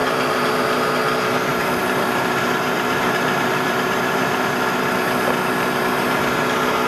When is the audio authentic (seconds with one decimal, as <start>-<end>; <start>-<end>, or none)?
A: 0.5-1.5; 4.5-6.9